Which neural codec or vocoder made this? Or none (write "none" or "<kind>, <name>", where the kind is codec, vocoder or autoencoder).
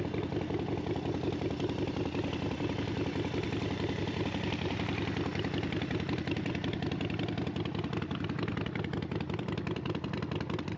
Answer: vocoder, BigVGAN v2